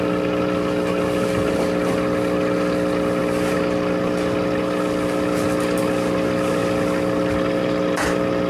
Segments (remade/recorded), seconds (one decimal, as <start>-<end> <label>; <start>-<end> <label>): 0.0-8.5 recorded